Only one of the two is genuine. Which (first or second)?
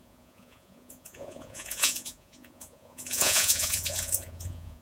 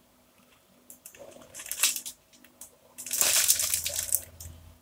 second